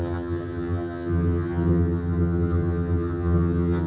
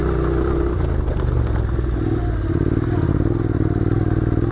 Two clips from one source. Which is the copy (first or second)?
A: first